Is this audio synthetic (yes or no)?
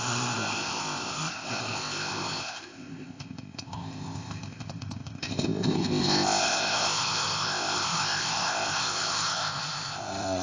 yes